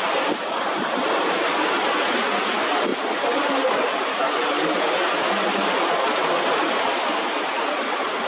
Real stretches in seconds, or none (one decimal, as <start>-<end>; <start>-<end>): 0.0-8.3